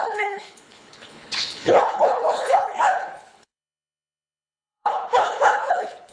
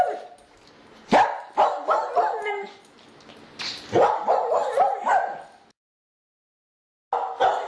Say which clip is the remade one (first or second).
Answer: first